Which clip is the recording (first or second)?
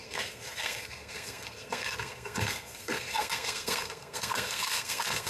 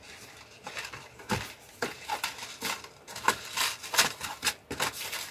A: second